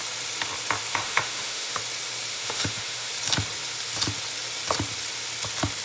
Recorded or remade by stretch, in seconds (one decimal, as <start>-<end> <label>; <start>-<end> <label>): 0.0-0.9 recorded; 0.9-1.8 remade; 1.8-2.3 recorded; 2.3-3.1 remade; 3.1-5.8 recorded